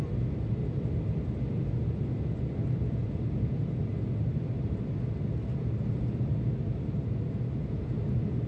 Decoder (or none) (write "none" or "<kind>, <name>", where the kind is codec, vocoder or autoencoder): none